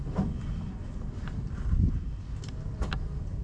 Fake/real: real